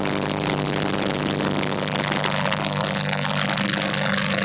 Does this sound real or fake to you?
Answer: real